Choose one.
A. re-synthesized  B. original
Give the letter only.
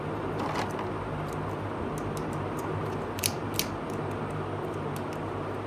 B